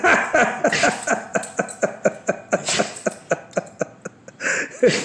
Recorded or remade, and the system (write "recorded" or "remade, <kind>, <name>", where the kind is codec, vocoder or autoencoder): recorded